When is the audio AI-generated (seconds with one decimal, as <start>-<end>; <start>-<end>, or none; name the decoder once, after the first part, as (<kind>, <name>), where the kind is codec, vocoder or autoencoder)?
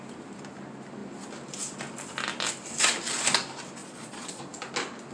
3.8-4.4 (vocoder, Vocos)